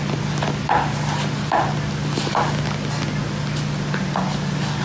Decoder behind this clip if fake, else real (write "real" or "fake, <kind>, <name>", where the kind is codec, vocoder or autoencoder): real